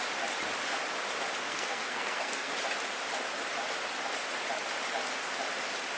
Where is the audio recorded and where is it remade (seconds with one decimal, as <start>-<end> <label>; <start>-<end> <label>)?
0.0-1.4 recorded; 1.4-2.5 remade; 2.5-6.0 recorded